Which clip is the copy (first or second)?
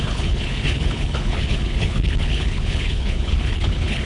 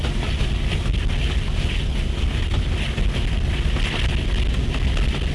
first